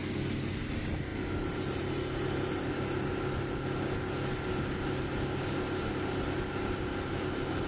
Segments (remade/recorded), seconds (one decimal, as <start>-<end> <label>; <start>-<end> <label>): 0.0-7.7 recorded